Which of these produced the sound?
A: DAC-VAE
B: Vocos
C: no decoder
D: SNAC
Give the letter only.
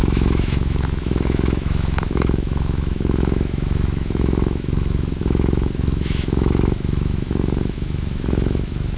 A